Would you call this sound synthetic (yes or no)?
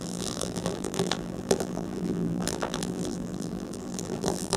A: yes